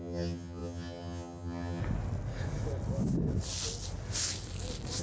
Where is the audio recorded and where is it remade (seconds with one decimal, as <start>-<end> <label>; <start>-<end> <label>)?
0.0-1.8 remade; 1.8-5.0 recorded